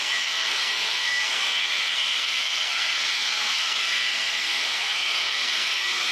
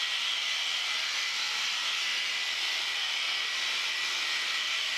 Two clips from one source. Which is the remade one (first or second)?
first